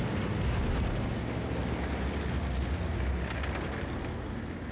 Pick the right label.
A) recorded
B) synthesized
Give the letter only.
A